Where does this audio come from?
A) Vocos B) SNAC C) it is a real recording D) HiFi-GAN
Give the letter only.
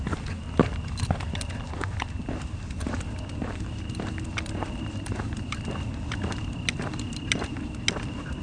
C